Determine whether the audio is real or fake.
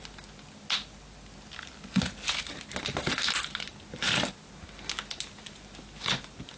real